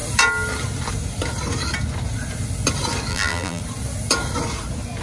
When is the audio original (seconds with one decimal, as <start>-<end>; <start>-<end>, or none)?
0.0-3.1; 3.6-5.0